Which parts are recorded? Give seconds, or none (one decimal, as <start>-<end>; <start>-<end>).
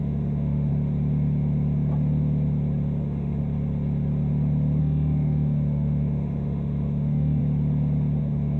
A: 0.7-3.0; 3.4-4.8; 7.4-8.2